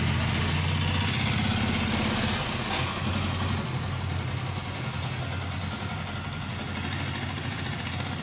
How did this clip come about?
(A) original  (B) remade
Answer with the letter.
A